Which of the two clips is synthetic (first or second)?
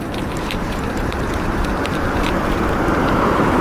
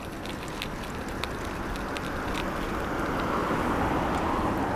first